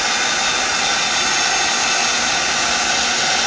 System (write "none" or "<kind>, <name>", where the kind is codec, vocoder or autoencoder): none